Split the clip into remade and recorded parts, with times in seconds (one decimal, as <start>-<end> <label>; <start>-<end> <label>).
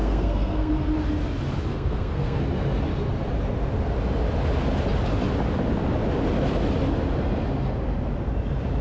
0.0-0.7 remade; 0.7-1.7 recorded; 1.7-2.4 remade; 2.4-8.8 recorded